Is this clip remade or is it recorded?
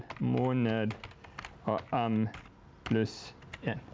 recorded